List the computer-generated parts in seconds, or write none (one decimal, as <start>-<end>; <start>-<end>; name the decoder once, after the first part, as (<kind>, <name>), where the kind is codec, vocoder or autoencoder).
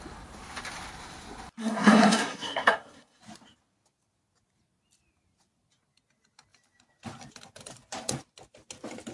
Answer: 1.6-3.2 (codec, SNAC)